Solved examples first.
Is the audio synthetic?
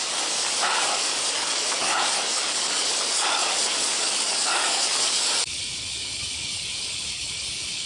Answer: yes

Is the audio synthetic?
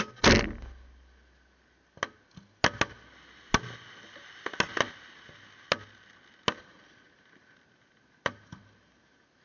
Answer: no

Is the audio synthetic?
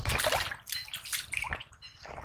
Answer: no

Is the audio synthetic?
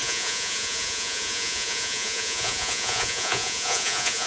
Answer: yes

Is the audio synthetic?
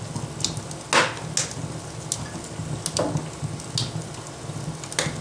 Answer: no